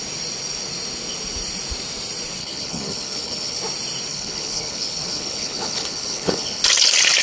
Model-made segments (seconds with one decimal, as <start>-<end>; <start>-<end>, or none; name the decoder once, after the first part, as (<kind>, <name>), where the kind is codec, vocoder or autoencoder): 2.4-3.6 (codec, HILCodec); 4.1-6.6